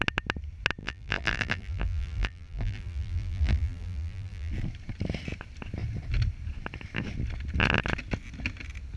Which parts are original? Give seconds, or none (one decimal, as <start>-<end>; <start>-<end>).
0.0-0.8; 4.5-9.0